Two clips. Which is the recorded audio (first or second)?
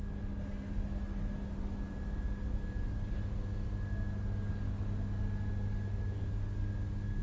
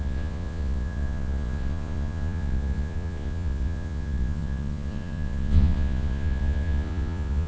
first